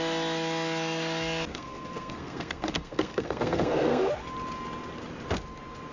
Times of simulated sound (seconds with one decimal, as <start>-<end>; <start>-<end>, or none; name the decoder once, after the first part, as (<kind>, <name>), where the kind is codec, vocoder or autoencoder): 1.5-4.1 (codec, SNAC)